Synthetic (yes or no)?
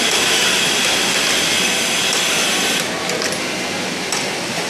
no